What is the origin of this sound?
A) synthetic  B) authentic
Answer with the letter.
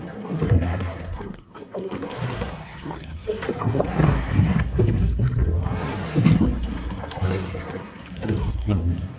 A